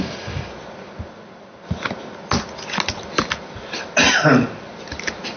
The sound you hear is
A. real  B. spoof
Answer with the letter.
A